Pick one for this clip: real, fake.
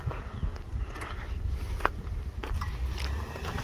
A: real